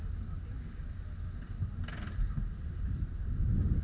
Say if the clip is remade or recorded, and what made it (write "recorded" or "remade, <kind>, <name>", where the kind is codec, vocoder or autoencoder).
recorded